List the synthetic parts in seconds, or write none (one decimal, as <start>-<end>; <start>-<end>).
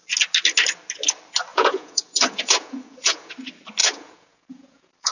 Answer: 1.5-3.3; 3.8-5.1